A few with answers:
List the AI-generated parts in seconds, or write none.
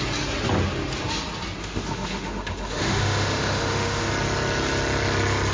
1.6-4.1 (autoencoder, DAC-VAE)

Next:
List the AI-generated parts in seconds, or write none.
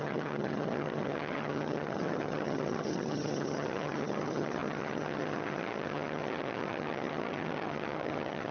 0.0-8.5 (vocoder, HiFi-GAN)